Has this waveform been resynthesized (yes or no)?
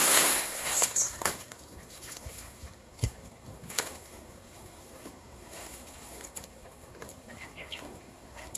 yes